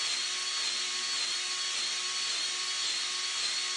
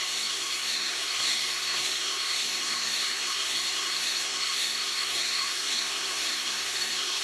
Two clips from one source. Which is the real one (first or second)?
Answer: first